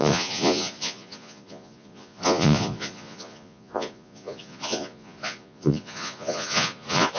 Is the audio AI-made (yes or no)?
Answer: yes